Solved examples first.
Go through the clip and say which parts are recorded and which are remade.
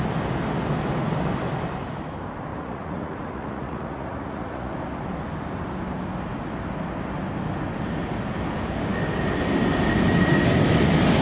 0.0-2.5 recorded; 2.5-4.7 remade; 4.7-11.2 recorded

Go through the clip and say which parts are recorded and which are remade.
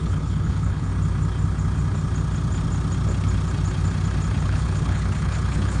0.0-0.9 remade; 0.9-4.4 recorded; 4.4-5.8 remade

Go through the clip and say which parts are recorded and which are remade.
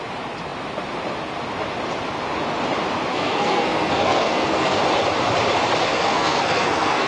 0.0-3.1 recorded; 3.1-4.8 remade; 4.8-5.8 recorded; 5.8-7.1 remade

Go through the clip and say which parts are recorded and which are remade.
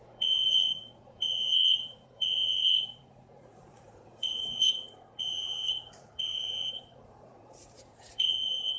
0.0-8.8 remade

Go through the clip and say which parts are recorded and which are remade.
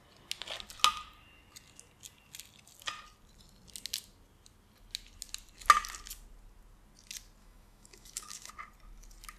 0.0-7.4 recorded; 7.4-8.5 remade; 8.5-9.4 recorded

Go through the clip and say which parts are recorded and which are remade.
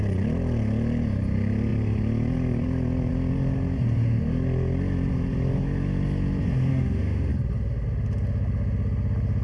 0.0-6.7 recorded; 6.7-7.3 remade; 7.3-9.4 recorded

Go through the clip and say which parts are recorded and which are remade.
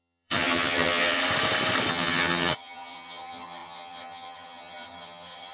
0.0-1.2 remade; 1.2-1.9 recorded; 1.9-5.5 remade